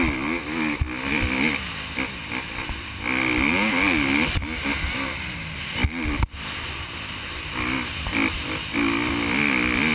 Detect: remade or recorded recorded